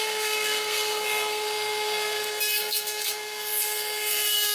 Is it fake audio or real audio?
fake